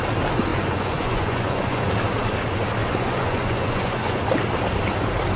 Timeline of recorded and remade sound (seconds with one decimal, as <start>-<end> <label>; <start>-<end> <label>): 0.0-0.5 recorded; 0.5-1.9 remade; 1.9-2.8 recorded; 2.8-4.2 remade; 4.2-5.4 recorded